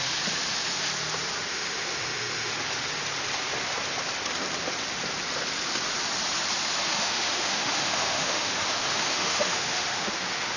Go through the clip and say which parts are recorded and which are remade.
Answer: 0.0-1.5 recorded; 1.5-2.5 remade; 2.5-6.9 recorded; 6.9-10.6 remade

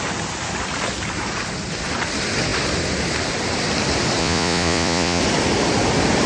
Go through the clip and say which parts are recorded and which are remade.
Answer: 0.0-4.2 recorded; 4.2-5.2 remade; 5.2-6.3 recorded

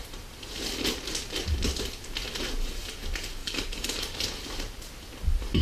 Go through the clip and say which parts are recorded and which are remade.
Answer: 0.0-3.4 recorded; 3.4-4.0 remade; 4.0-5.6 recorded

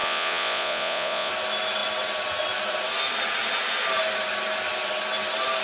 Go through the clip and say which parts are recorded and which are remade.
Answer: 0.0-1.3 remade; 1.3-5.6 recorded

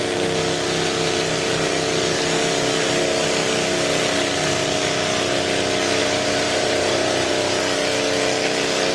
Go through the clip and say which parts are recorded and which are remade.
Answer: 0.0-6.0 recorded; 6.0-7.3 remade; 7.3-8.9 recorded

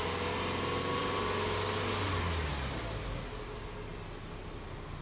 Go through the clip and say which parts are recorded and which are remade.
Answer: 0.0-5.0 recorded

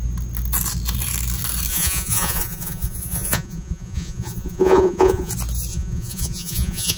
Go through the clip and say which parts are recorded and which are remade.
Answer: 0.0-1.7 recorded; 1.7-5.3 remade; 5.3-5.7 recorded; 5.7-7.0 remade